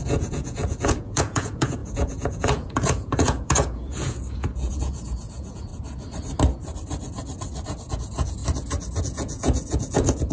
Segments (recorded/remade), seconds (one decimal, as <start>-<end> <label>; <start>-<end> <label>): 0.0-5.7 remade; 5.7-7.9 recorded; 7.9-8.4 remade; 8.4-9.0 recorded; 9.0-10.3 remade